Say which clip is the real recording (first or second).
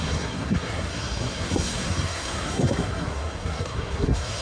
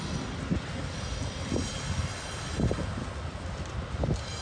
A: second